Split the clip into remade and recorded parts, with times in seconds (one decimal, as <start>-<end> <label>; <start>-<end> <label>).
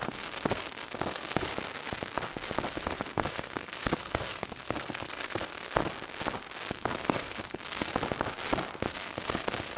0.0-1.5 remade; 1.5-2.7 recorded; 2.7-5.8 remade; 5.8-6.8 recorded; 6.8-7.9 remade; 7.9-8.9 recorded; 8.9-9.8 remade